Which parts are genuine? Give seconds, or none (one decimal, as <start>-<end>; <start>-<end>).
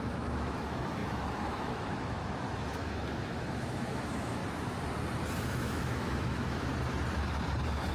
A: 4.4-5.4; 6.7-7.9